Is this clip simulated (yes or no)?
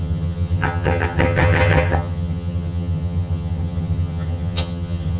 yes